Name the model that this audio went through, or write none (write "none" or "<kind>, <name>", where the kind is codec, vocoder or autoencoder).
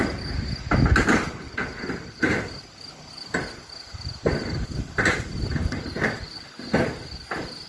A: none